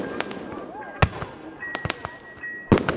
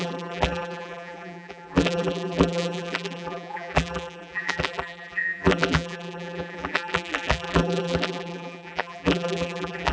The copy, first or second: second